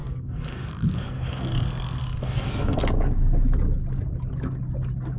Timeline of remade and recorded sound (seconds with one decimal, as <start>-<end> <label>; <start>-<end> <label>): 0.0-2.8 remade; 2.8-5.2 recorded